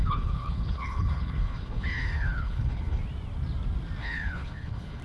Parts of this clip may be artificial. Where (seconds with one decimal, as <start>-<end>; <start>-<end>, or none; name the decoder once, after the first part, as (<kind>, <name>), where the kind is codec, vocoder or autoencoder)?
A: 0.0-3.0 (codec, HILCodec); 4.0-5.0